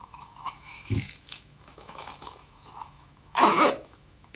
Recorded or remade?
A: remade